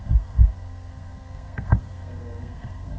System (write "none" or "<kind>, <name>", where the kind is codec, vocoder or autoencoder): codec, SNAC